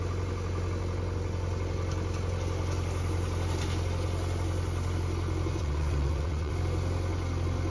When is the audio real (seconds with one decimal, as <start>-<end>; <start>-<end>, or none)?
0.0-5.6; 6.5-7.7